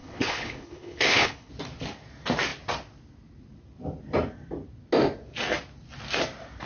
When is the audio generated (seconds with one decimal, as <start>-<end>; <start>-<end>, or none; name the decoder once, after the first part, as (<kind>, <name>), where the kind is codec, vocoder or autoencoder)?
0.0-1.5 (codec, HILCodec)